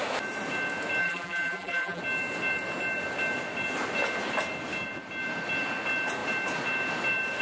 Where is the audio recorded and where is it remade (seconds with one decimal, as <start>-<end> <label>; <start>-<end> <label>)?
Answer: 0.0-1.0 recorded; 1.0-2.0 remade; 2.0-7.4 recorded